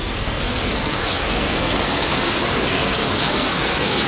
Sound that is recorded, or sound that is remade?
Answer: remade